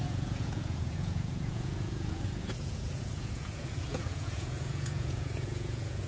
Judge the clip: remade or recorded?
remade